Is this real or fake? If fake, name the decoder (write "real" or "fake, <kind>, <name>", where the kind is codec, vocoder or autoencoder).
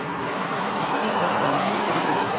fake, codec, SNAC